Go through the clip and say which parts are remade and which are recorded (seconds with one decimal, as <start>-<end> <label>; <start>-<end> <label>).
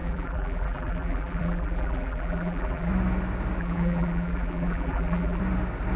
0.0-2.9 remade; 2.9-3.6 recorded; 3.6-5.4 remade; 5.4-6.0 recorded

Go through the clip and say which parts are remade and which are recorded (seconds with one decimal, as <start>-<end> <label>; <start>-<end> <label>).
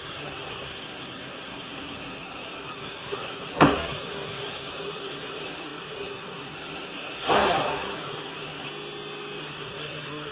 0.0-8.7 remade; 8.7-9.4 recorded; 9.4-10.3 remade